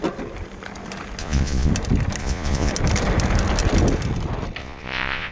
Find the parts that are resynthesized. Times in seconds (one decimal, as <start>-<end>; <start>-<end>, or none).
1.2-1.7; 2.2-2.7; 4.6-5.3